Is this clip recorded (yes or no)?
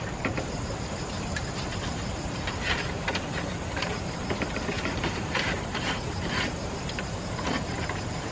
no